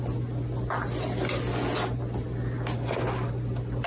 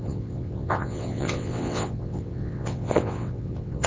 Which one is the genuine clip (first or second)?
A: first